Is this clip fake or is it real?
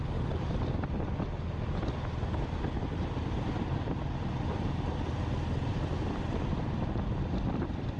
real